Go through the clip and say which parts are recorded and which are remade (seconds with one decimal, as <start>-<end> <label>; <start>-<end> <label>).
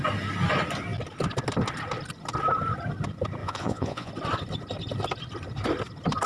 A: 0.0-3.4 recorded; 3.4-4.1 remade; 4.1-6.3 recorded